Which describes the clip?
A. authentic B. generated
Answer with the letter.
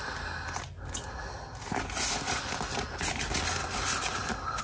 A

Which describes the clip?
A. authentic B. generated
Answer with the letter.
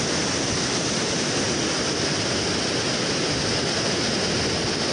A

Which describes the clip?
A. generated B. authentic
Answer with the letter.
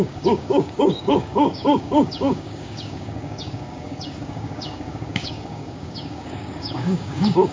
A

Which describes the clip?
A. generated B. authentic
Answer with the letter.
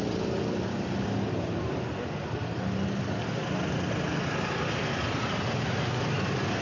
B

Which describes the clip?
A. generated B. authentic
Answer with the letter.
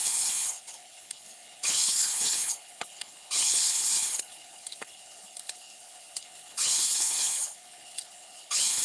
A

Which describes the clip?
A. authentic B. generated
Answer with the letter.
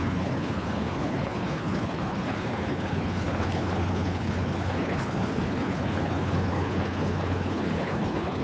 B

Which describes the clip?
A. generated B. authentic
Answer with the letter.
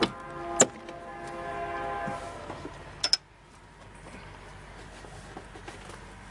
B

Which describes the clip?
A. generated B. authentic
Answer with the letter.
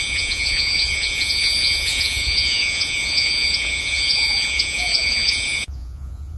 A